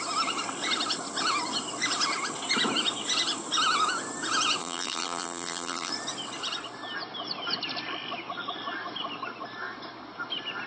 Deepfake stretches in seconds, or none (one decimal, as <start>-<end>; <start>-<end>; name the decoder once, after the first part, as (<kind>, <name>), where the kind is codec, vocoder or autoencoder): 4.6-5.9 (vocoder, BigVGAN v2)